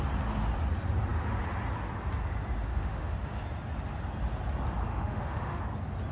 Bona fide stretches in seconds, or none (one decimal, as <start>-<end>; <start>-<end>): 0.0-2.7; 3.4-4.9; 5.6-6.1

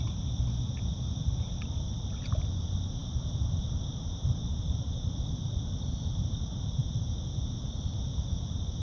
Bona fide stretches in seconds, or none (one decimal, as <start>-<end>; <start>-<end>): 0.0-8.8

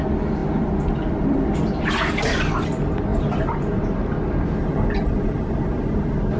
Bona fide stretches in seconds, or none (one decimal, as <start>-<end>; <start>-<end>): 0.0-6.4

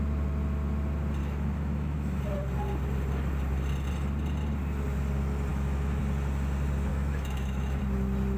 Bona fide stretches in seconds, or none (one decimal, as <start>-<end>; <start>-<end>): 0.0-1.2; 2.2-5.5; 6.0-6.9; 7.8-8.4

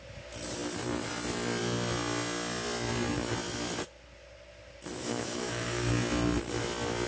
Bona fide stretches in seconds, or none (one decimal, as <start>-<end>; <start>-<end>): 0.0-5.0; 5.9-7.1

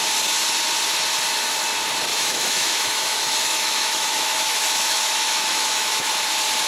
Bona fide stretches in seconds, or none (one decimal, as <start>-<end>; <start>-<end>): 0.0-2.1; 6.1-6.7

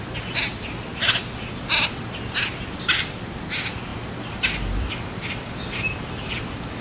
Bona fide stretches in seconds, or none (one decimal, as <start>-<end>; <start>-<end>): 0.0-6.8